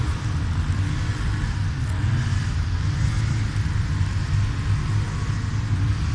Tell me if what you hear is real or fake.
real